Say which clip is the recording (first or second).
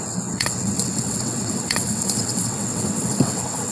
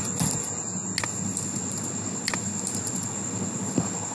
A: second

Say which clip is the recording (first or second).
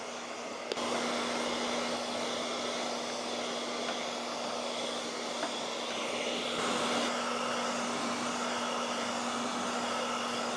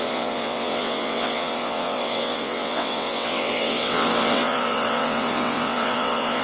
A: first